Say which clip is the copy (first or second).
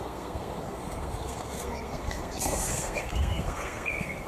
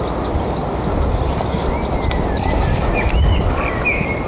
first